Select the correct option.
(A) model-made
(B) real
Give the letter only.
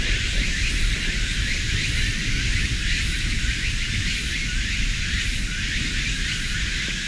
B